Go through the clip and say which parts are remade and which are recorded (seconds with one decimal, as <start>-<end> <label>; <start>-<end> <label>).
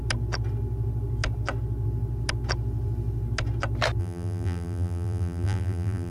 0.0-4.0 recorded; 4.0-6.1 remade